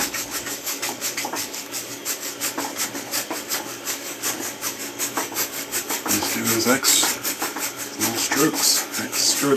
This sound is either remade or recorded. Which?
remade